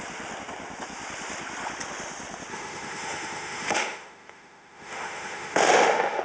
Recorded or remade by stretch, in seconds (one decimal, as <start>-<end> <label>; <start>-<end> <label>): 0.0-2.5 recorded; 2.5-6.2 remade